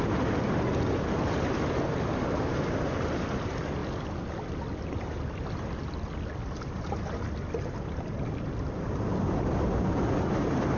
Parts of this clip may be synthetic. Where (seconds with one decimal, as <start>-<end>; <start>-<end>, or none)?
none